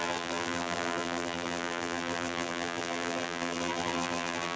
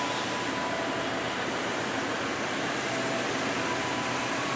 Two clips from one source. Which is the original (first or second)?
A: second